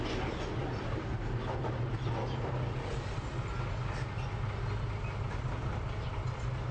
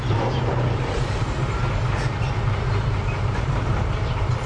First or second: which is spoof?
second